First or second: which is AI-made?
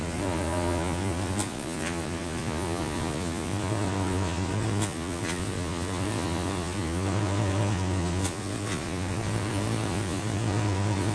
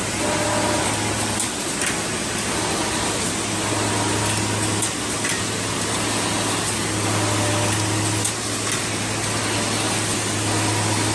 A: first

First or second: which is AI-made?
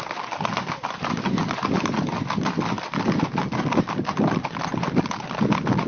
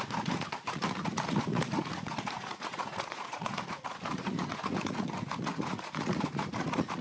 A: second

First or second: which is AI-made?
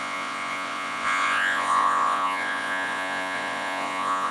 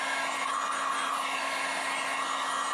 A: first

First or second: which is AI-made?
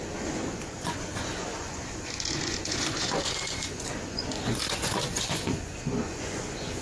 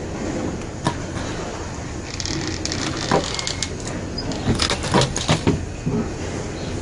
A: first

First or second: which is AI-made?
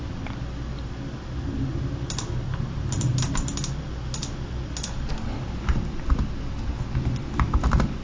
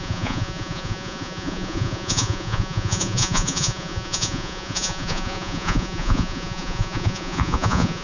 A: second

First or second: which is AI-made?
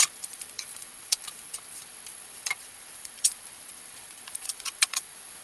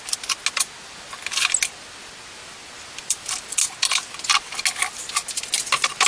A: first